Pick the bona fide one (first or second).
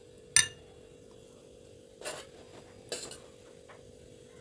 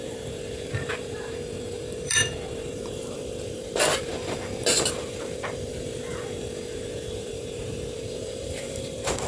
first